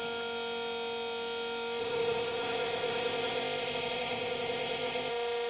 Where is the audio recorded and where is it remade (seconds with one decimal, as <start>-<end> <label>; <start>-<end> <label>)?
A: 0.0-1.8 recorded; 1.8-5.1 remade; 5.1-5.5 recorded